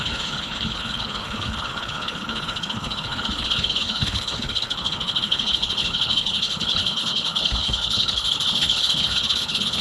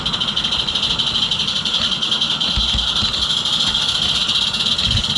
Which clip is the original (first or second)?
second